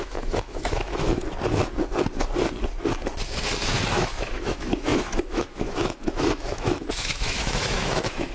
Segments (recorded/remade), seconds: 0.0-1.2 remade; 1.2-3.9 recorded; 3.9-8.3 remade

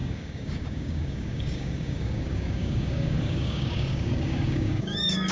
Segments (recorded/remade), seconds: 0.0-5.3 remade

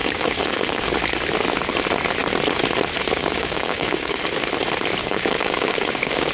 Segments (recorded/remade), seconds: 0.0-0.9 remade; 0.9-3.2 recorded; 3.2-4.2 remade; 4.2-5.0 recorded; 5.0-6.3 remade

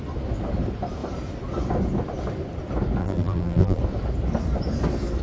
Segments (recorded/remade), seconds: 0.0-3.0 recorded; 3.0-3.8 remade; 3.8-5.2 recorded

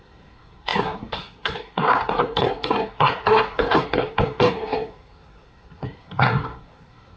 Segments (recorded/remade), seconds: 0.0-7.2 remade

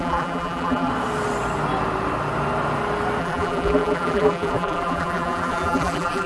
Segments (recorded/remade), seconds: 0.0-0.9 remade; 0.9-3.2 recorded; 3.2-6.3 remade

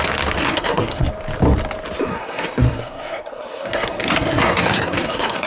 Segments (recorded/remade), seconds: 0.0-0.4 recorded; 0.4-1.1 remade; 1.1-2.1 recorded; 2.1-5.5 remade